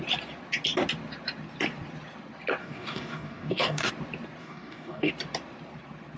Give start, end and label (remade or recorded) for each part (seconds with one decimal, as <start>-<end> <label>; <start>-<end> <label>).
0.0-2.6 recorded; 2.6-3.9 remade; 3.9-4.4 recorded; 4.4-5.1 remade; 5.1-6.2 recorded